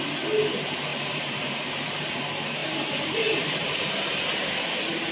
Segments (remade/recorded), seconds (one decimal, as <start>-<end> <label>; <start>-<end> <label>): 0.0-0.9 recorded; 0.9-2.2 remade; 2.2-2.6 recorded; 2.6-3.9 remade; 3.9-5.1 recorded